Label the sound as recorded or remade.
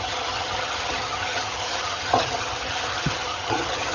remade